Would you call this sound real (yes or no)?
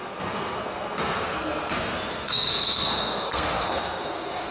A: no